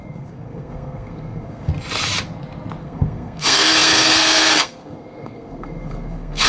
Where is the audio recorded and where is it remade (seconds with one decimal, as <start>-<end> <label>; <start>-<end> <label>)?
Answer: 0.0-1.7 remade; 1.7-2.8 recorded; 2.8-6.5 remade